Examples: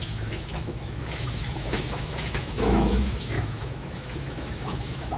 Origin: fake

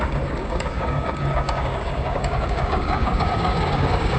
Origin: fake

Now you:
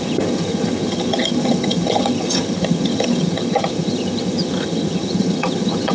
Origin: fake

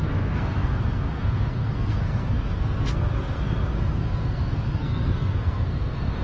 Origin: fake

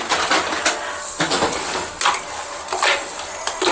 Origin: real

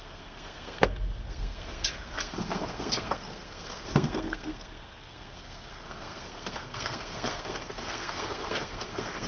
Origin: fake